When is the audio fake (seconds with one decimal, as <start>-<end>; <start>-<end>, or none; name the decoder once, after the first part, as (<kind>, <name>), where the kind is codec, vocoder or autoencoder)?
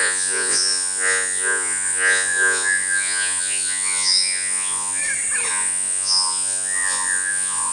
0.0-5.0 (vocoder, Vocos); 5.5-7.7